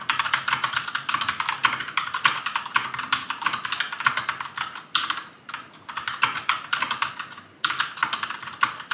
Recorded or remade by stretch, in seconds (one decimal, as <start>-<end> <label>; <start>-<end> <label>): 0.0-8.9 recorded